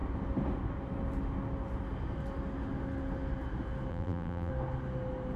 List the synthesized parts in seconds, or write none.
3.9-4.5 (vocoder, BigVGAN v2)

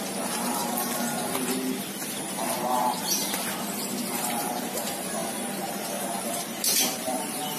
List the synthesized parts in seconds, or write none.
0.0-0.6 (vocoder, BigVGAN v2); 4.2-5.2; 5.7-7.6

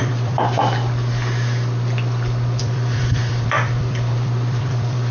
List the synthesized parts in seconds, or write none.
0.0-0.6 (vocoder, BigVGAN v2); 2.6-5.1

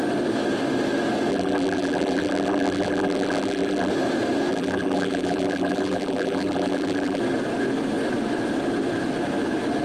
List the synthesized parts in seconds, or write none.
1.3-3.9 (vocoder, BigVGAN v2); 4.5-7.2